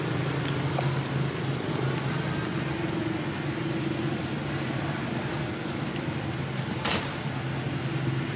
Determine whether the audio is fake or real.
real